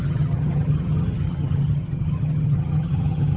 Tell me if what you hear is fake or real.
fake